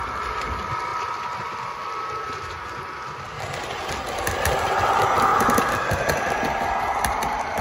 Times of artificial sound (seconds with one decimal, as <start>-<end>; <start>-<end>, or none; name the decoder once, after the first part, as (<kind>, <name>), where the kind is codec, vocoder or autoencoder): 0.9-2.4 (vocoder, BigVGAN v2); 5.3-7.6